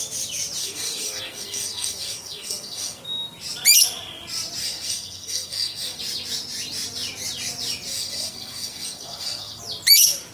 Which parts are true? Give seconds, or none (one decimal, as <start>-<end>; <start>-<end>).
0.0-0.6; 3.0-4.6; 6.0-7.9; 9.6-10.3